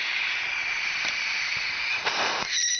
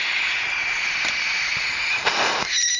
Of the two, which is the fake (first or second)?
first